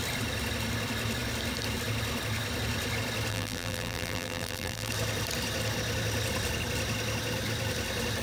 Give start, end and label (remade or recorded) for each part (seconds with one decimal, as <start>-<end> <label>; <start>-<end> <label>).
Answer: 0.0-3.3 recorded; 3.3-4.9 remade; 4.9-8.2 recorded